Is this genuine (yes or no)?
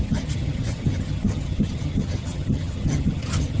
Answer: no